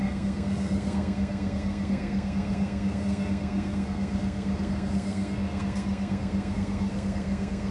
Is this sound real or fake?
fake